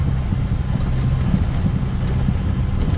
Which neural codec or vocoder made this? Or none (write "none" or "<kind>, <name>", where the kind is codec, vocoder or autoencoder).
none